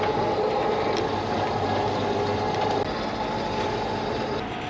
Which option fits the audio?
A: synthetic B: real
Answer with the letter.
B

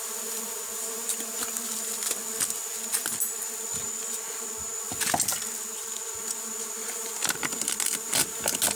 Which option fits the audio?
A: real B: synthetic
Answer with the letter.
A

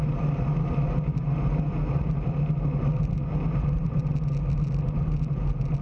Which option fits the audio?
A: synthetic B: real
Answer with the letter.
B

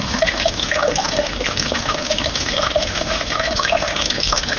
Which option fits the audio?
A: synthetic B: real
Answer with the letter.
A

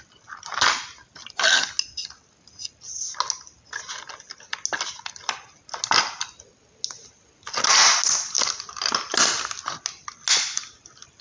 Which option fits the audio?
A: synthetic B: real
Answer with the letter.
B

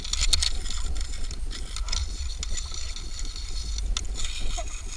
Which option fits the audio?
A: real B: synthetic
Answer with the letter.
A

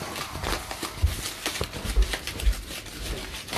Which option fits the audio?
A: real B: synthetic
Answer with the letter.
A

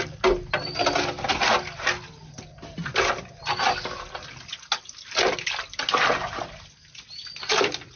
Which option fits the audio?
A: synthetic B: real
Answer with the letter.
B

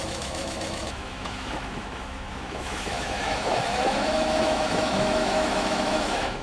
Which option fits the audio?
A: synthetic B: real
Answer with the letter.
A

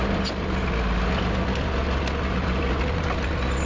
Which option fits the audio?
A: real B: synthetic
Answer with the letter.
A